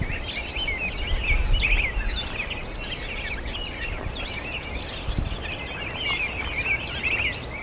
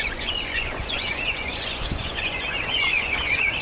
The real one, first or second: first